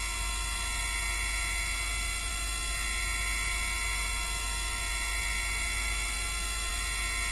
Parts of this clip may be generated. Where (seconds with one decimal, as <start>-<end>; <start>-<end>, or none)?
none